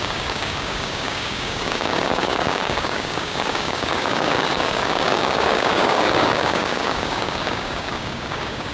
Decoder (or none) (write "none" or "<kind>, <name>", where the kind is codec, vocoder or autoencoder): codec, DAC